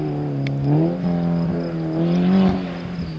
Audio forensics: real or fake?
real